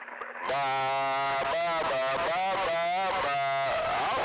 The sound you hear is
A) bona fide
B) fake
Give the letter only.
A